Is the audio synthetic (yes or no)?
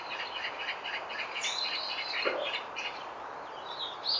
no